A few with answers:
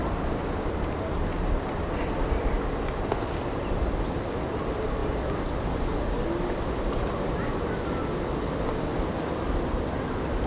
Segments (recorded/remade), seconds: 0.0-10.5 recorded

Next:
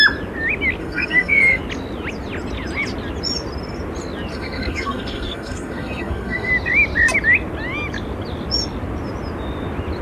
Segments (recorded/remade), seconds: 0.0-0.8 recorded; 0.8-1.6 remade; 1.6-4.3 recorded; 4.3-6.5 remade; 6.5-10.0 recorded